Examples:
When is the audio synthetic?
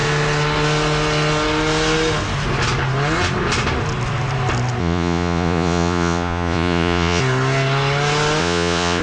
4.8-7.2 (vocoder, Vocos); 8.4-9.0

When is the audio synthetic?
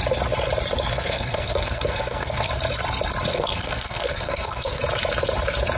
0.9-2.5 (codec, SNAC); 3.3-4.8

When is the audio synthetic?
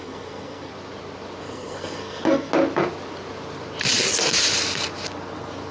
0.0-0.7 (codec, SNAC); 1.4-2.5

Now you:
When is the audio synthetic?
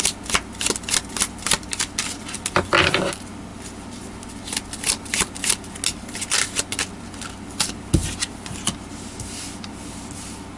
none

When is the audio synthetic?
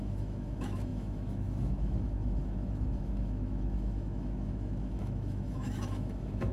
0.0-6.5 (autoencoder, DAC-VAE)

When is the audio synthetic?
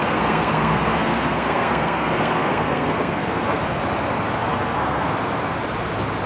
0.0-3.8 (codec, SNAC); 4.5-5.1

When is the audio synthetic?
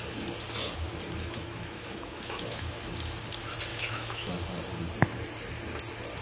1.2-2.8 (autoencoder, DAC-VAE); 3.7-4.3